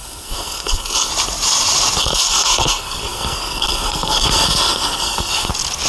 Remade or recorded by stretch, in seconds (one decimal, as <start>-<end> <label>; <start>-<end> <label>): 0.0-1.1 remade; 1.1-2.0 recorded; 2.0-5.5 remade; 5.5-5.9 recorded